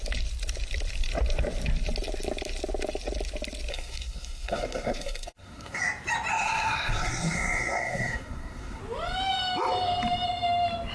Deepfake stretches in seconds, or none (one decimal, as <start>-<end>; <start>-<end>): 3.7-5.8; 6.3-8.8